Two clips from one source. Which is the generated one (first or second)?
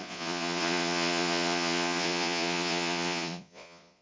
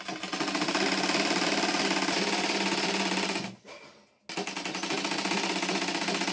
first